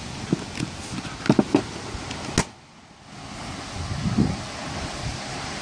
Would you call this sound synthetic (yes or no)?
no